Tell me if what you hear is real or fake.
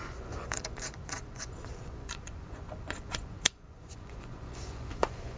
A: fake